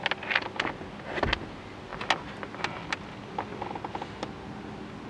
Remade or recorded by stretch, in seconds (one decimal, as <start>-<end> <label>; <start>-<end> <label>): 0.0-5.1 recorded